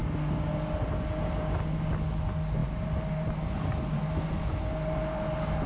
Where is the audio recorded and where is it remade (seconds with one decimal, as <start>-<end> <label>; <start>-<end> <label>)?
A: 0.0-5.7 recorded